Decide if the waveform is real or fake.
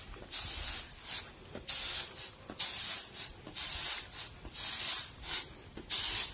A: real